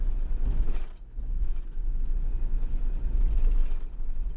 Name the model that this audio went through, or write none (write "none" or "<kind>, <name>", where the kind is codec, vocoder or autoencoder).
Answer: none